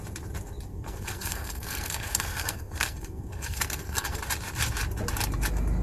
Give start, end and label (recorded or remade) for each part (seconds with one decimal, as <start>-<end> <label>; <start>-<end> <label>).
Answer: 0.0-0.7 recorded; 0.7-4.2 remade; 4.2-5.8 recorded